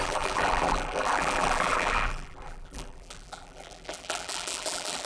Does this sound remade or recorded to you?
remade